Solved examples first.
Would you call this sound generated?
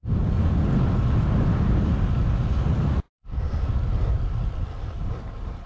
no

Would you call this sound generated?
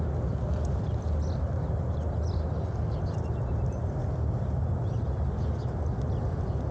no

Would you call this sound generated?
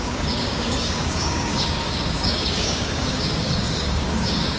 yes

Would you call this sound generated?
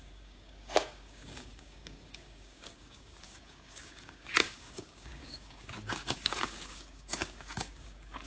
yes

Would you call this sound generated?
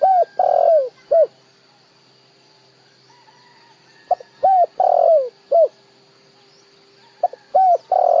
no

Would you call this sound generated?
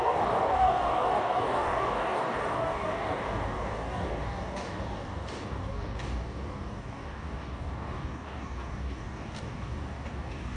yes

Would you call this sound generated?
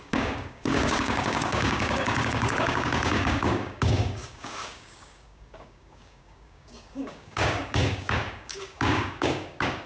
yes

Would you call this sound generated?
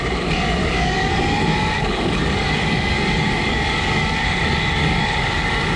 yes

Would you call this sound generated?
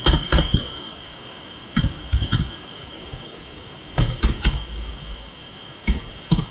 yes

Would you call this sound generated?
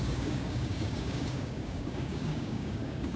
yes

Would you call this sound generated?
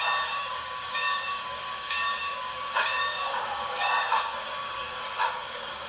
yes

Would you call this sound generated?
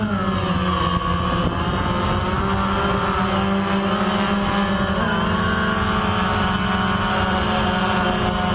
no